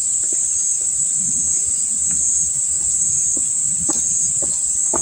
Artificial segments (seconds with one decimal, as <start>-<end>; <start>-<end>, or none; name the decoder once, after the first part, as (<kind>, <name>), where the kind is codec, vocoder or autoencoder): 0.0-0.8 (vocoder, BigVGAN v2)